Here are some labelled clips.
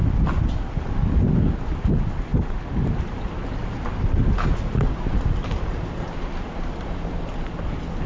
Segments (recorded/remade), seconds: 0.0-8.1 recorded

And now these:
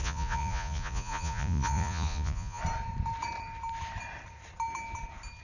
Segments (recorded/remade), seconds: 0.0-2.6 remade; 2.6-5.4 recorded

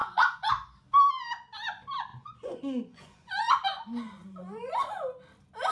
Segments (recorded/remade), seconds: 0.0-0.5 remade; 0.5-2.1 recorded; 2.1-4.7 remade; 4.7-5.7 recorded

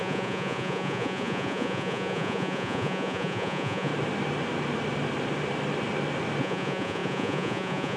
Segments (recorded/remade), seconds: 0.0-3.9 remade; 3.9-6.4 recorded; 6.4-8.0 remade

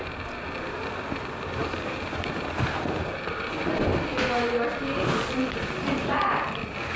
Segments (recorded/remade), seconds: 0.0-7.0 recorded

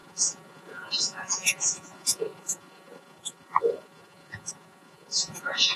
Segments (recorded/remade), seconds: 0.0-5.8 remade